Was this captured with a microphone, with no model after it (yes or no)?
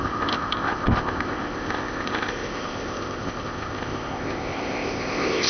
no